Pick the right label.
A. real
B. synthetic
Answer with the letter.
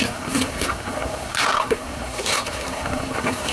B